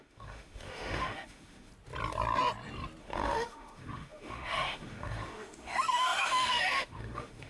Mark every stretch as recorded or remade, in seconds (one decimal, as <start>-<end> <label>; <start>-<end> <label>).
0.0-1.7 remade; 1.7-3.0 recorded; 3.0-7.5 remade